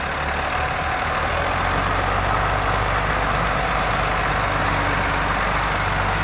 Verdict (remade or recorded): remade